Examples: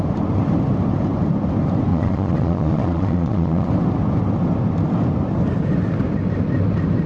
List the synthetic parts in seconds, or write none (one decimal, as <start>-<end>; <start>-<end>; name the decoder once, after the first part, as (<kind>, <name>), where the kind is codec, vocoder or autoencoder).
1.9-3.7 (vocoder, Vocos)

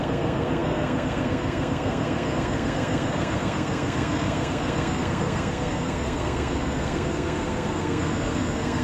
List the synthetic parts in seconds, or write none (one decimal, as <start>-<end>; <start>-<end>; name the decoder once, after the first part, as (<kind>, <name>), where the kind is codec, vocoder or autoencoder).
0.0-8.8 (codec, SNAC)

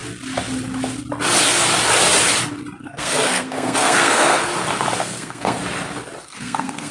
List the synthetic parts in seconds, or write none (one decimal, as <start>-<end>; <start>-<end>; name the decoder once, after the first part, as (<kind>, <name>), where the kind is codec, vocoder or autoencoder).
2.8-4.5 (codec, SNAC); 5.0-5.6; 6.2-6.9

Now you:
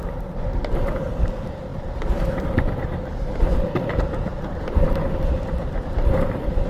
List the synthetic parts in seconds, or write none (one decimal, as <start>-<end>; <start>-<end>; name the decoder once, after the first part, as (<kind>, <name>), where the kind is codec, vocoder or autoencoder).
4.3-5.4 (vocoder, BigVGAN v2)

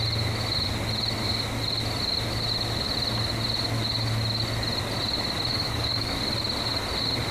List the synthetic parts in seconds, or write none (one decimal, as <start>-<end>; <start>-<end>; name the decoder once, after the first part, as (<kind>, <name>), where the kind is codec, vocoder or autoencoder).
5.5-6.2 (codec, DAC)

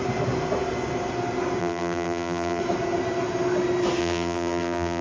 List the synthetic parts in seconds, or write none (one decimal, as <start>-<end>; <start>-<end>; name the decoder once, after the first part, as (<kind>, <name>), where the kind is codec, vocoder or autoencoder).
1.6-2.6 (vocoder, BigVGAN v2); 4.0-5.0

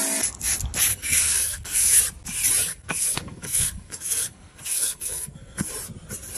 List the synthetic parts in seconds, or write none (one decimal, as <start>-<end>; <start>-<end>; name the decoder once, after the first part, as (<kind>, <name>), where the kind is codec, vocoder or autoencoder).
0.9-2.0 (codec, SNAC); 2.7-5.7

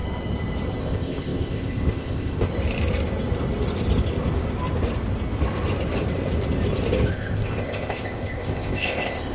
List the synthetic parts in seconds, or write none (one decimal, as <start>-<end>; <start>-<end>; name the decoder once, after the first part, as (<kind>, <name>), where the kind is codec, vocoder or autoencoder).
0.8-2.5 (codec, ZipCodec); 7.1-9.3